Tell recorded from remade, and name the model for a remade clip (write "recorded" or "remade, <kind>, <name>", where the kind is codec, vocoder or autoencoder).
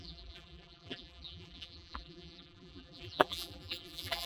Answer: remade, vocoder, BigVGAN v2